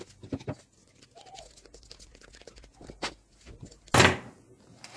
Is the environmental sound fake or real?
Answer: real